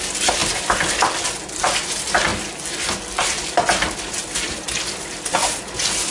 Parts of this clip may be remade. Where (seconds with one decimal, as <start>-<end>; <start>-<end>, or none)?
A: none